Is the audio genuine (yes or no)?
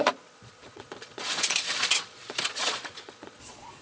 no